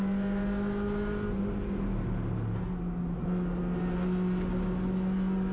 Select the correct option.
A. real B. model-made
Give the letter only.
A